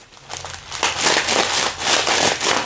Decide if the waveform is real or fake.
real